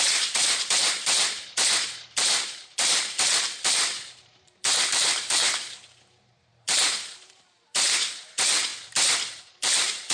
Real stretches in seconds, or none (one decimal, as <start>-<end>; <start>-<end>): 8.7-9.4